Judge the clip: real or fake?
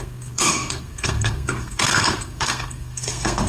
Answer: fake